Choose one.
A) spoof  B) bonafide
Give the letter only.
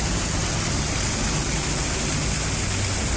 B